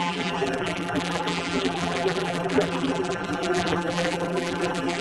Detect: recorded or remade remade